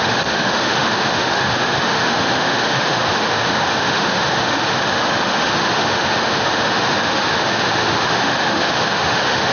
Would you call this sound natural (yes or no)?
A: no